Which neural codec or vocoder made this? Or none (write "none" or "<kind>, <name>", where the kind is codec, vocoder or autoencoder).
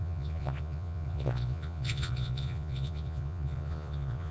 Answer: vocoder, Vocos